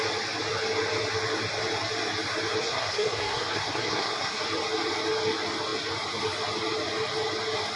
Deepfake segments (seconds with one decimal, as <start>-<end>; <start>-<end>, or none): 2.6-4.4